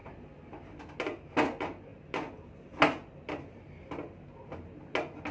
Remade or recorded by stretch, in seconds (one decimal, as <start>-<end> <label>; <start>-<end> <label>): 0.0-5.3 recorded